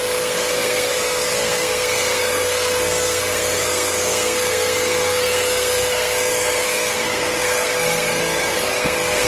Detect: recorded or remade remade